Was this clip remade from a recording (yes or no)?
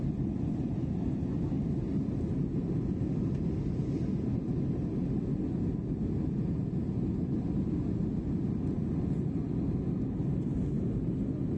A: no